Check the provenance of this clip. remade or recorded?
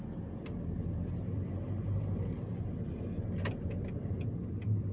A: recorded